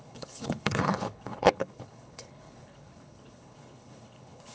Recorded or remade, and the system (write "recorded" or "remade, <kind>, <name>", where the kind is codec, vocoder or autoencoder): remade, codec, HILCodec